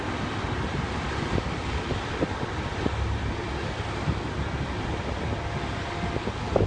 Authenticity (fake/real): real